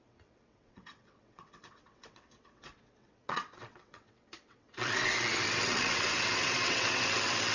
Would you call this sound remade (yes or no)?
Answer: yes